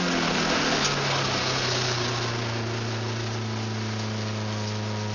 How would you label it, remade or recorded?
recorded